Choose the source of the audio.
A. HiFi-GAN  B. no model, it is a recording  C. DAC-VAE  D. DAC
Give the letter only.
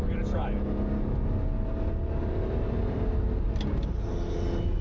B